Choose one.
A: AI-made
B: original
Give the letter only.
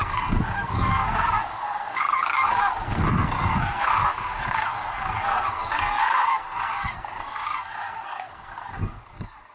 A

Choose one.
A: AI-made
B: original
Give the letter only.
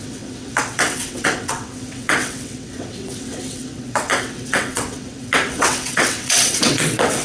A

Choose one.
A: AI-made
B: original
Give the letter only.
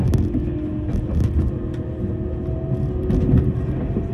B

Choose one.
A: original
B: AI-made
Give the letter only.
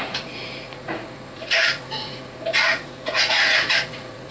B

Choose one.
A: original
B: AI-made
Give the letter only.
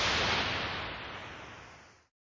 A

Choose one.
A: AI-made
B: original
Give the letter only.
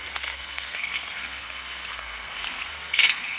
A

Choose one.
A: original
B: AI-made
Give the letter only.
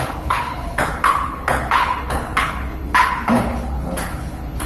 B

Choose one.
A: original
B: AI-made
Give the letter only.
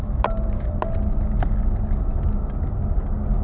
A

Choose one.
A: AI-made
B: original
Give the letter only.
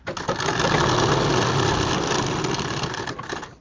B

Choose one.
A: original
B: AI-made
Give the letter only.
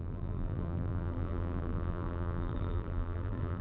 B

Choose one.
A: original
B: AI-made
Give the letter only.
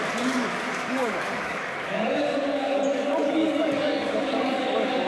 B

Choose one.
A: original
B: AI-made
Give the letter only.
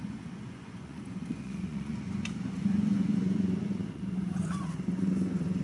B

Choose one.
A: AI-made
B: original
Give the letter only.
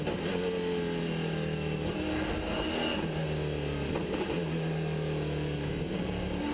B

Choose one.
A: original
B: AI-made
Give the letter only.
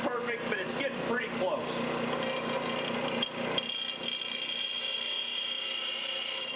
A